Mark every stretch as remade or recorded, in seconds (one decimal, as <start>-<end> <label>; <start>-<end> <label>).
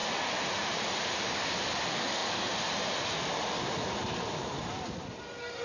0.0-5.6 recorded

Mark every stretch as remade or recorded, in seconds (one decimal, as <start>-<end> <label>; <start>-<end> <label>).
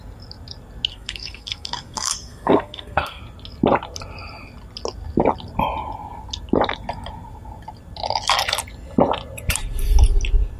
0.0-0.9 recorded; 0.9-3.2 remade; 3.2-10.6 recorded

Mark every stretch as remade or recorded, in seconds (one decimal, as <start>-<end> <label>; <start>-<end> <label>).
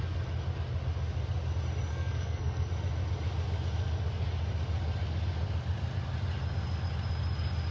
0.0-1.9 recorded; 1.9-2.7 remade; 2.7-7.7 recorded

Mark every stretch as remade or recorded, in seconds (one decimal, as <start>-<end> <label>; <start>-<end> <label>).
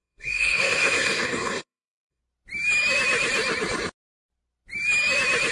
0.0-2.2 remade; 2.2-5.5 recorded